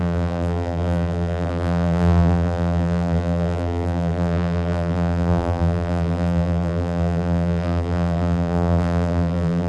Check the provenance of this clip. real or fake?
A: fake